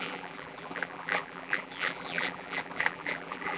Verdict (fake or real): fake